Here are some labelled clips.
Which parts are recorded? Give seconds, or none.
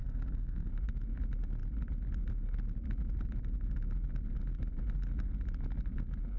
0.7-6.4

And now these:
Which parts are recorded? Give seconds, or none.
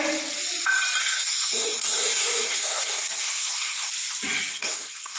0.0-1.0; 3.9-4.5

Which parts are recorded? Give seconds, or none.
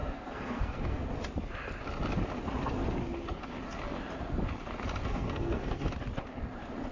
1.1-5.0; 5.9-6.9